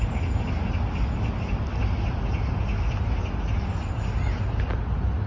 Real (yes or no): yes